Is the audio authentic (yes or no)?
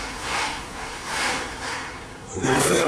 no